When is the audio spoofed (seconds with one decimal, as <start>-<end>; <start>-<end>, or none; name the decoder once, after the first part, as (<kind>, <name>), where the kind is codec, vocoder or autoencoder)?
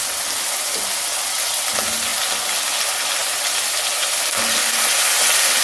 3.2-3.8 (vocoder, BigVGAN v2)